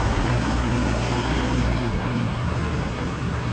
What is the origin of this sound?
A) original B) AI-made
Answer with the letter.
B